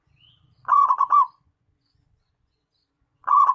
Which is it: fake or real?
fake